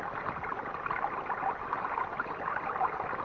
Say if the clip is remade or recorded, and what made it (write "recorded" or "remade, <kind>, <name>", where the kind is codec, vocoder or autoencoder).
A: recorded